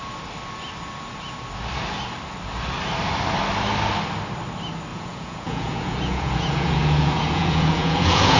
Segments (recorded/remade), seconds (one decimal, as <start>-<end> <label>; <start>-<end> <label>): 0.0-4.9 recorded; 4.9-8.4 remade